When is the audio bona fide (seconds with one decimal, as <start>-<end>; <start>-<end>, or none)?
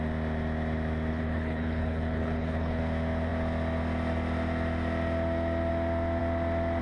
0.0-1.1; 2.8-6.8